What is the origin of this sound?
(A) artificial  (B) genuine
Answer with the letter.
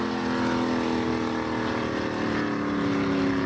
B